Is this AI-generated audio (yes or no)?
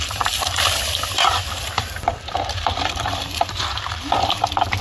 yes